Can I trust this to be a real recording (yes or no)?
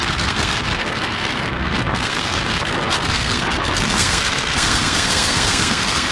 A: no